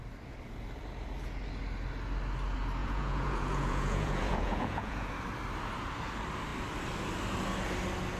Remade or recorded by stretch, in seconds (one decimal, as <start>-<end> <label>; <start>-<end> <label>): 0.0-2.8 recorded; 2.8-5.1 remade; 5.1-8.2 recorded